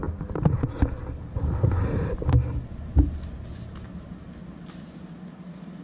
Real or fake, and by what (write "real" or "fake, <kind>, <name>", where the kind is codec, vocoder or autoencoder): real